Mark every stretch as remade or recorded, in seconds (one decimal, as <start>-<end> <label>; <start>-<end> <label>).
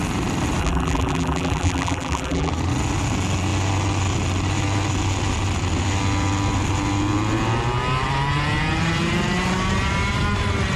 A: 0.0-0.6 recorded; 0.6-2.5 remade; 2.5-10.8 recorded